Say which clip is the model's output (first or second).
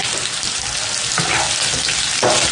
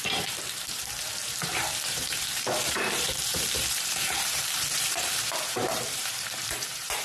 second